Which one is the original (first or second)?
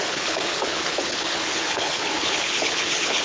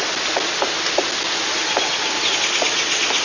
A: second